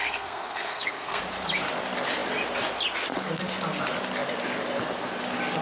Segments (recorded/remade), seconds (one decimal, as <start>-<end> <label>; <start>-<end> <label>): 0.0-1.2 remade; 1.2-5.6 recorded